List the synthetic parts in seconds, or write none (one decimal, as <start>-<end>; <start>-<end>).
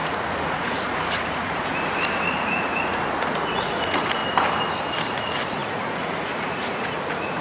0.0-4.2; 5.0-7.4